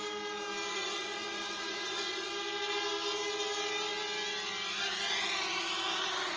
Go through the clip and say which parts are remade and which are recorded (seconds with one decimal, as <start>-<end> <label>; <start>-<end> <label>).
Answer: 0.0-0.7 recorded; 0.7-2.3 remade; 2.3-6.4 recorded